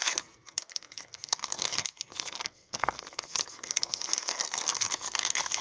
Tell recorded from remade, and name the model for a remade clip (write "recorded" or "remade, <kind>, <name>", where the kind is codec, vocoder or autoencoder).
remade, codec, SNAC